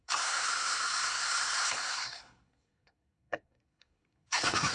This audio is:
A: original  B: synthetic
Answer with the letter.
B